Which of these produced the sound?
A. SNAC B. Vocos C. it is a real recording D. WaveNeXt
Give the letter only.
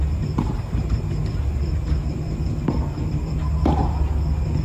C